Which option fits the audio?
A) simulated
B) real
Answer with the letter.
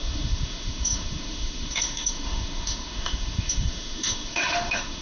A